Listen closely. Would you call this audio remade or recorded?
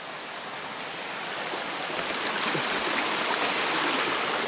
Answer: recorded